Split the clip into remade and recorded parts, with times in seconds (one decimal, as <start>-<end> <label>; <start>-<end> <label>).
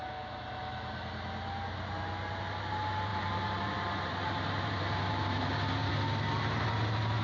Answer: 0.0-3.1 recorded; 3.1-5.9 remade; 5.9-7.2 recorded